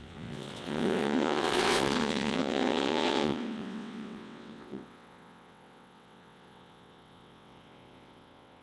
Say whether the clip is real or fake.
fake